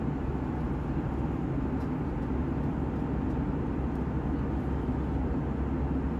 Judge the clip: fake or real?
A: real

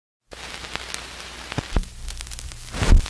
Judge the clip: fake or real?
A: real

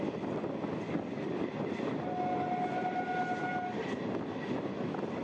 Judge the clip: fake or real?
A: real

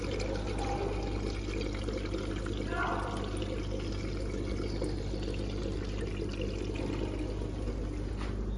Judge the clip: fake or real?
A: real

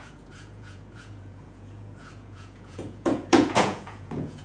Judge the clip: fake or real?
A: fake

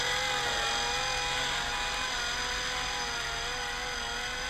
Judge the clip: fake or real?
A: real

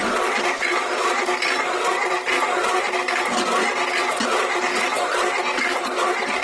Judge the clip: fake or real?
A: real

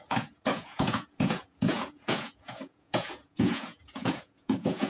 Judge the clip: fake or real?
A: fake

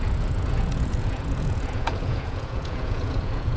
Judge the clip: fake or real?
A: fake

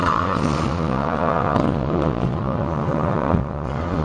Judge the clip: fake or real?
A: fake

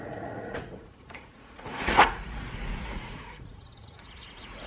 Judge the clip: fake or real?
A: fake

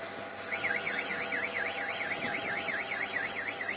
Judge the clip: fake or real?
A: real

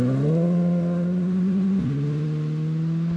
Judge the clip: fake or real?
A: real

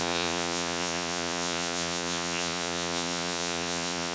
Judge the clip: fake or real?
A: fake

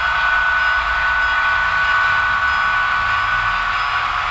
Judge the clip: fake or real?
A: real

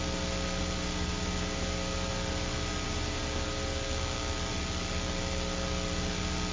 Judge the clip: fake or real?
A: real